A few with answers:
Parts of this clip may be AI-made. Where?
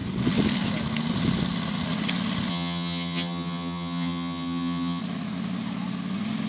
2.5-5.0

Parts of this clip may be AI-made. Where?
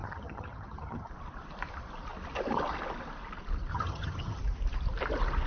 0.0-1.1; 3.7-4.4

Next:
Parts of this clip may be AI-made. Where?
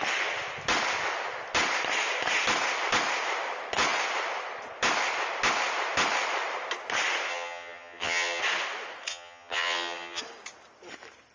7.3-8.4; 9.1-10.2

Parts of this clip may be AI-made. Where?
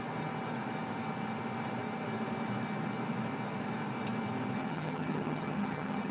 4.6-6.1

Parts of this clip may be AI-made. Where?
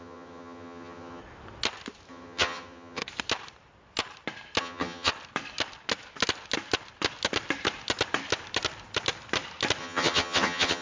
0.0-1.2; 2.1-3.0; 4.6-5.1; 9.8-10.8